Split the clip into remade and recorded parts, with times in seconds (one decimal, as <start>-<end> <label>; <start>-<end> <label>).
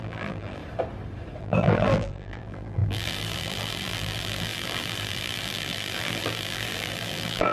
0.0-0.6 remade; 0.6-1.4 recorded; 1.4-7.5 remade